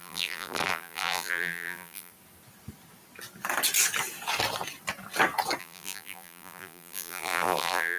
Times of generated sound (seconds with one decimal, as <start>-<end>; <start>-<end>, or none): 0.0-2.1; 5.6-8.0